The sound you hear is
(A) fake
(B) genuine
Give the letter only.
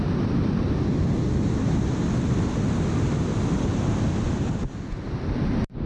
B